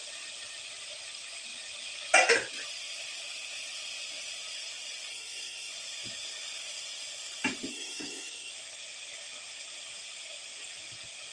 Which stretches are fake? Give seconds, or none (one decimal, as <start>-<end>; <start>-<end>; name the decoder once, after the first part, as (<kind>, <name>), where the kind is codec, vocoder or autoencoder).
5.1-5.7 (codec, SNAC); 7.7-8.5